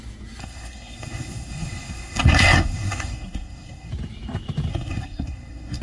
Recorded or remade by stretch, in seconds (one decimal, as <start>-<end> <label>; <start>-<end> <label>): 0.0-0.4 recorded; 0.4-3.9 remade; 3.9-4.7 recorded; 4.7-5.8 remade